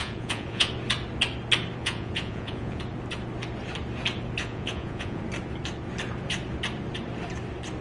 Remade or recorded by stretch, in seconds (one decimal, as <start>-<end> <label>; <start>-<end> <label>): 0.0-0.7 remade; 0.7-1.8 recorded; 1.8-2.8 remade; 2.8-4.4 recorded; 4.4-5.2 remade; 5.2-7.8 recorded

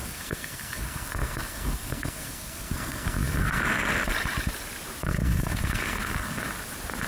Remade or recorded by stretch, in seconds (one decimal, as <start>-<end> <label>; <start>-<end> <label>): 0.0-3.6 remade; 3.6-5.0 recorded; 5.0-6.4 remade; 6.4-7.1 recorded